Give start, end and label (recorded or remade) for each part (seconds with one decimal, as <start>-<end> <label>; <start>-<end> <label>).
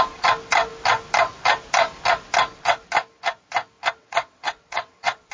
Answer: 0.0-4.0 recorded; 4.0-5.3 remade